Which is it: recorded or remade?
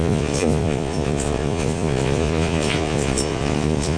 remade